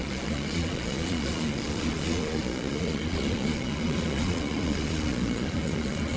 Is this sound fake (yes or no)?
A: yes